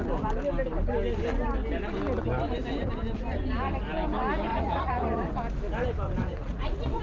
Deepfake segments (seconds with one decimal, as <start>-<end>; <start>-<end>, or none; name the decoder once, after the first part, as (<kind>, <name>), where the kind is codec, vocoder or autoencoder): 4.5-5.3 (vocoder, Vocos); 6.2-7.0